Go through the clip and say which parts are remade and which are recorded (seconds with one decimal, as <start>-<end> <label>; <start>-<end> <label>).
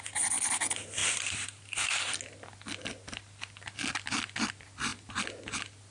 0.0-5.9 recorded